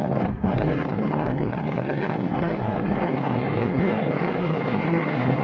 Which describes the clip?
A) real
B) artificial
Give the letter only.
B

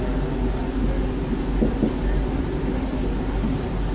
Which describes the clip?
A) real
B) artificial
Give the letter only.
A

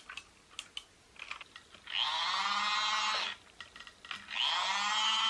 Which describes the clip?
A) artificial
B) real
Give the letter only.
B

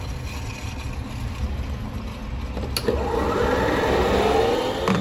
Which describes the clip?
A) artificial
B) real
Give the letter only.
B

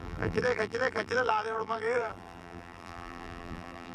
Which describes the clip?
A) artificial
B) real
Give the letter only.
A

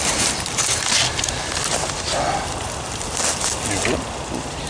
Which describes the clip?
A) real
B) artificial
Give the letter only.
A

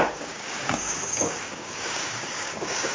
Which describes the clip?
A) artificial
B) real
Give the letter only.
A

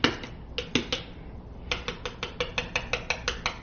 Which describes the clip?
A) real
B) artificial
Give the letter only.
A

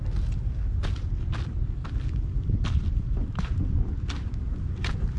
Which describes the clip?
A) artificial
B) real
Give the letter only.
A